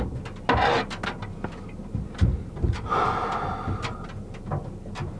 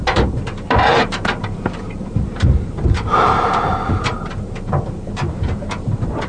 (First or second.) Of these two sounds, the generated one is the second